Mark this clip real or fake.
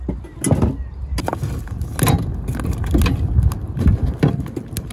real